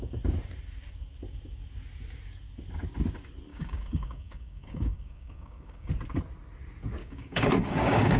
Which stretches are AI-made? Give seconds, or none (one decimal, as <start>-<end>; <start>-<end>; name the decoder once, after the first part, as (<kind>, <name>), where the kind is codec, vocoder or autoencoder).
3.5-5.9 (codec, DAC); 7.0-8.2